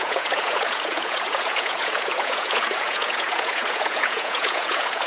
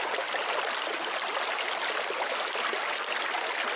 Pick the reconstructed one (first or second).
first